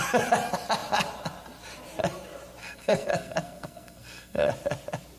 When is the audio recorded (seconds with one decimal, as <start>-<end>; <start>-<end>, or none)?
0.0-2.6; 4.5-5.2